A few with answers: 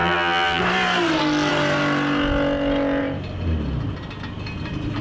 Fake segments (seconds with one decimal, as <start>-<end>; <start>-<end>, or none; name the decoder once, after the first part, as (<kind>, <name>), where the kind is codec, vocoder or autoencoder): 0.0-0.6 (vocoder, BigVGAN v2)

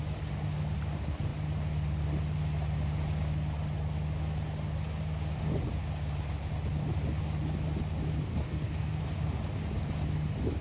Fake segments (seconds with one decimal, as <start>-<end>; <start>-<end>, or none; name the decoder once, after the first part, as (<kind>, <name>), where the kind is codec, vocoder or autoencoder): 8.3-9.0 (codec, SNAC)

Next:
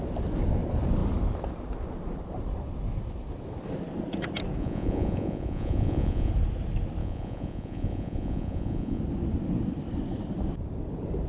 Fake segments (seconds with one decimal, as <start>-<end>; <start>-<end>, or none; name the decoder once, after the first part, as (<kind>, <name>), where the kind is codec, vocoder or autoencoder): 4.6-6.3 (vocoder, Vocos); 7.0-9.0